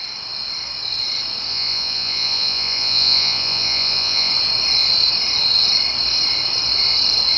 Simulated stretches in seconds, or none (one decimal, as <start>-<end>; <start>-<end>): 1.5-4.3